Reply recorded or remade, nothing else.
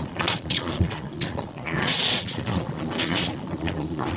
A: remade